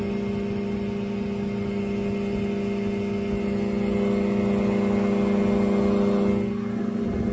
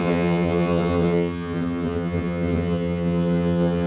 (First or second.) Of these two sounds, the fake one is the second